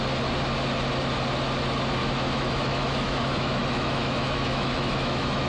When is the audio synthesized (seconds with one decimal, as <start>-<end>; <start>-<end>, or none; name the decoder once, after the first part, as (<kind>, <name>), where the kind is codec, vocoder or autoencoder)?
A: 2.0-5.5 (autoencoder, DAC-VAE)